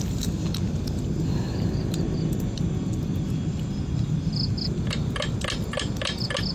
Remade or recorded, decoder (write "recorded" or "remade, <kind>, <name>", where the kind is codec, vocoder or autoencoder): recorded